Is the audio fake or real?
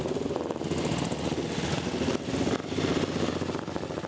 real